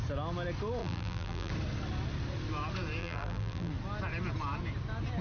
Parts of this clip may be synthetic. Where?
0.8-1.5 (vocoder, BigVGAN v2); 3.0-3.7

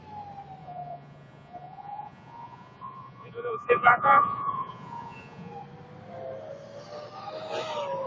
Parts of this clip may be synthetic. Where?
0.6-5.5 (vocoder, Vocos)

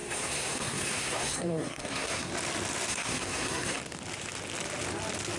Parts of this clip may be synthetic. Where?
0.0-2.3 (codec, SNAC); 2.9-3.8

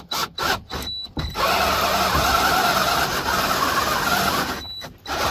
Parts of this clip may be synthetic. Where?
none